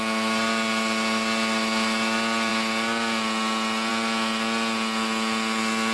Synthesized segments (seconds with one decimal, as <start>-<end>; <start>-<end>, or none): none